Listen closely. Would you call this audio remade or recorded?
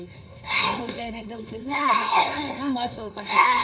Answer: remade